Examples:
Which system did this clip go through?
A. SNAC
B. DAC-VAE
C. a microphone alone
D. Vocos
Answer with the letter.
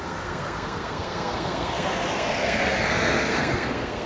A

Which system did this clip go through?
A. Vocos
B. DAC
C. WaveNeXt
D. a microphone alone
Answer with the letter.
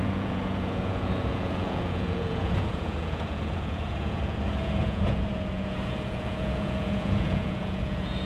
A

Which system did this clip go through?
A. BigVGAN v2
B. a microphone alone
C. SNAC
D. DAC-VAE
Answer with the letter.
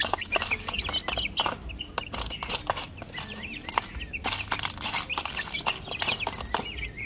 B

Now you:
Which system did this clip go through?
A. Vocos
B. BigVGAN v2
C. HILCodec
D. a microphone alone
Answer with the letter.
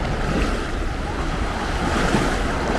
D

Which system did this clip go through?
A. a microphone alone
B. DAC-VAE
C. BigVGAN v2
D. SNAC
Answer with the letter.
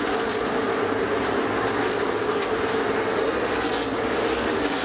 A